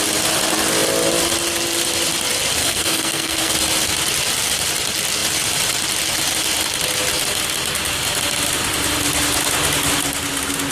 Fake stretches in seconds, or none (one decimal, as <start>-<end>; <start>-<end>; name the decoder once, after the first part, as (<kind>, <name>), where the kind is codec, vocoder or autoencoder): 2.6-3.5 (codec, SNAC)